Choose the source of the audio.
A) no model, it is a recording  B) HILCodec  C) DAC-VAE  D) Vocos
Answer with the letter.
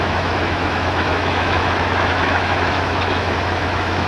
C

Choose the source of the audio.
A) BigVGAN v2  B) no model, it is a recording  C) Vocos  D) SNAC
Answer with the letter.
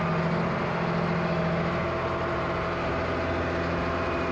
B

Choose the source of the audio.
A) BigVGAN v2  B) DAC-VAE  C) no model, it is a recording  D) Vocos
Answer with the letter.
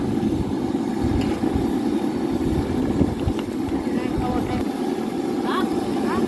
C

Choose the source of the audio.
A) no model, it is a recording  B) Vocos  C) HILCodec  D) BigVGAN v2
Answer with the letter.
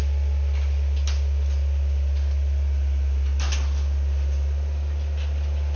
A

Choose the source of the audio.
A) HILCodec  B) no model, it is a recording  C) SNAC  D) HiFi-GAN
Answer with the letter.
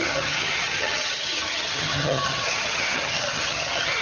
D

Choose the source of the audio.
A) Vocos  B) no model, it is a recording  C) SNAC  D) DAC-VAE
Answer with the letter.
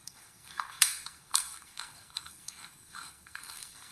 C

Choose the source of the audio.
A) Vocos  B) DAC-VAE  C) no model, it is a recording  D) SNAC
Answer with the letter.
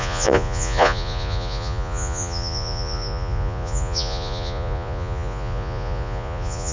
A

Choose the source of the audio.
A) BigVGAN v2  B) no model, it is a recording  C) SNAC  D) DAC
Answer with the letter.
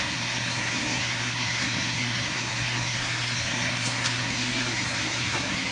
C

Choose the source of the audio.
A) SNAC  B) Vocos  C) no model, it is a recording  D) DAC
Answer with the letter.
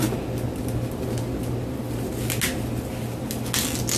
C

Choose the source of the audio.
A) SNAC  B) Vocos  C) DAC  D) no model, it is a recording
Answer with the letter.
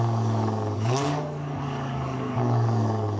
C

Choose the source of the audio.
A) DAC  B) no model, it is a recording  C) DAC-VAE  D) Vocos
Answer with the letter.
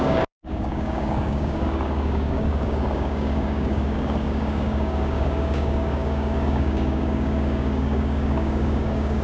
A